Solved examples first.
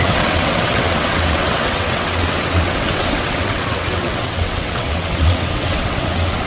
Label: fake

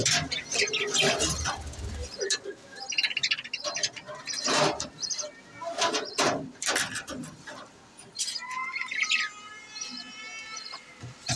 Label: real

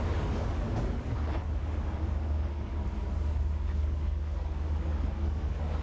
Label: fake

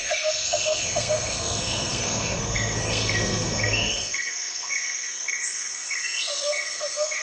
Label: fake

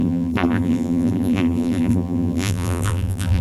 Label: fake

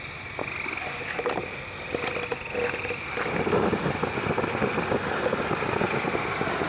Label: real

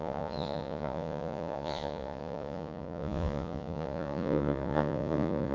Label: fake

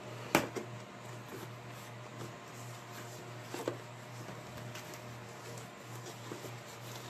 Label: real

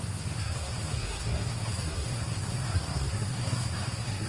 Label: fake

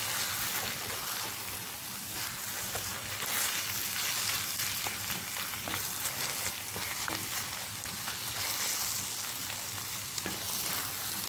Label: real